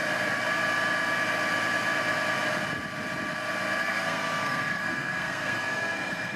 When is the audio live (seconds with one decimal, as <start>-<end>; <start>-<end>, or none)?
0.0-3.8